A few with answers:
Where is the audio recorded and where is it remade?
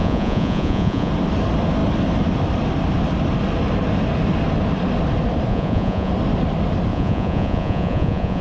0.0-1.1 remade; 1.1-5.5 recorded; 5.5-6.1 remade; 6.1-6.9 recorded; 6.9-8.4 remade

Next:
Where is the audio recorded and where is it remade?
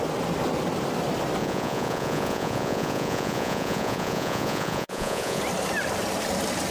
0.0-1.4 recorded; 1.4-5.4 remade; 5.4-6.7 recorded